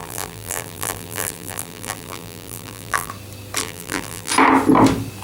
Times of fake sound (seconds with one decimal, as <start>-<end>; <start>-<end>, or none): 0.0-3.1; 3.6-4.3